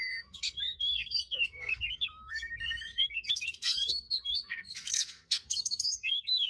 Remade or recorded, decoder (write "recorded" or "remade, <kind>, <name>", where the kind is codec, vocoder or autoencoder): remade, codec, SNAC